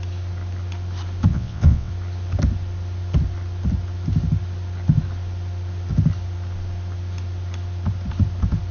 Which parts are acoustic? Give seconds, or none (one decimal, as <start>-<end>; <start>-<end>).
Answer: 0.0-1.3; 1.9-8.7